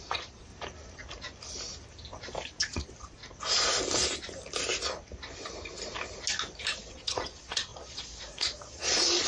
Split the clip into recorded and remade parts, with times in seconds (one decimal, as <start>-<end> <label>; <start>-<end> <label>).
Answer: 0.0-0.5 remade; 0.5-2.6 recorded; 2.6-3.2 remade; 3.2-6.8 recorded; 6.8-9.3 remade